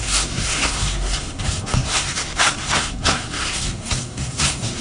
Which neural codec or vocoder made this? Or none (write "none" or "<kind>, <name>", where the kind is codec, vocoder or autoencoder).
codec, SNAC